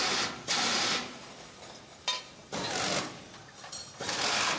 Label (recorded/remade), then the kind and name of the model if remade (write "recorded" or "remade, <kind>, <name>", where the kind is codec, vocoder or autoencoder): recorded